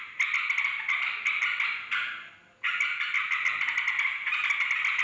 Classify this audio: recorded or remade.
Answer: recorded